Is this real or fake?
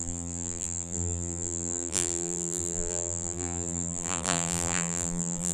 fake